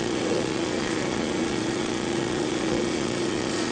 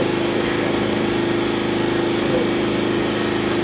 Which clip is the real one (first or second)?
second